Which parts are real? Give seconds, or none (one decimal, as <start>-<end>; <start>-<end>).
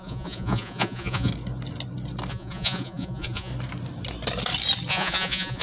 1.3-2.3; 3.5-4.9